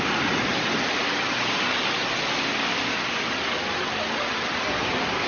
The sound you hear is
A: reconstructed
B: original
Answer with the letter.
B